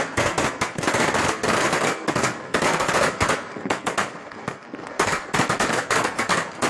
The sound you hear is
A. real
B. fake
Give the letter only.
B